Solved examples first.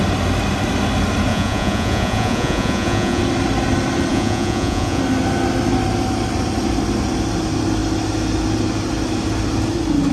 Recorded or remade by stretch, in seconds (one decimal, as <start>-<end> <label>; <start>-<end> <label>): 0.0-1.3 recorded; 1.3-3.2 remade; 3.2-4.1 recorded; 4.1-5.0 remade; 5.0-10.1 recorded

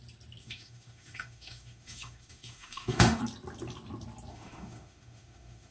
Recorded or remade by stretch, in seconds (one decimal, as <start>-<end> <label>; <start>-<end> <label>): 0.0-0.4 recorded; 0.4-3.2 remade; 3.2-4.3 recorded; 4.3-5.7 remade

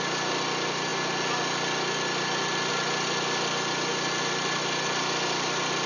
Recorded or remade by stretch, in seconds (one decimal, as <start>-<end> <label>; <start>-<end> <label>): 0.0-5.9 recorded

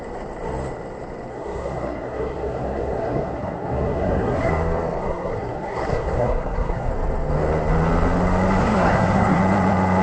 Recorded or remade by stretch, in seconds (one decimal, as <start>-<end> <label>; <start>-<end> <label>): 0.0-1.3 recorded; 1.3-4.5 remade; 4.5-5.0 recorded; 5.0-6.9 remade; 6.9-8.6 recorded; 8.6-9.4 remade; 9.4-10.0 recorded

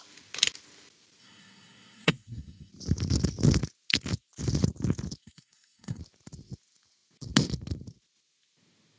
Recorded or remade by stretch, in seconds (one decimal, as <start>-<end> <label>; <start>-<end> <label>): 0.0-1.2 recorded; 1.2-2.7 remade; 2.7-5.2 recorded; 5.2-6.0 remade; 6.0-9.0 recorded

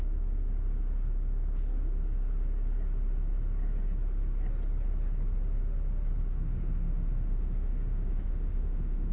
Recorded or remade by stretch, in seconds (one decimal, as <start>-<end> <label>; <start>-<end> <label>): 0.0-6.3 recorded; 6.3-9.1 remade

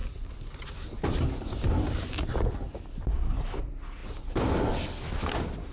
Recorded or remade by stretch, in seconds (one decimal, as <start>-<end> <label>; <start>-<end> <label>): 0.0-5.7 recorded

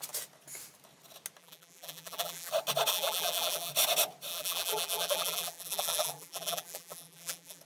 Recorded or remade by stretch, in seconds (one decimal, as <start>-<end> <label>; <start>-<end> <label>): 0.0-1.4 recorded; 1.4-2.5 remade; 2.5-2.9 recorded; 2.9-3.7 remade; 3.7-4.3 recorded; 4.3-7.6 remade